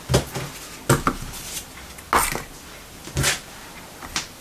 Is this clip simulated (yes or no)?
no